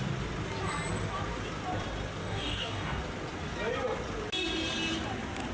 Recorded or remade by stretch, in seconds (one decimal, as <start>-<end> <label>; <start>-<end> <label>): 0.0-2.2 recorded; 2.2-3.0 remade; 3.0-5.5 recorded